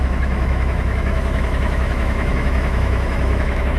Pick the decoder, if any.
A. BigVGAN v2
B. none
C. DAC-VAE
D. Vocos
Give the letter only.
C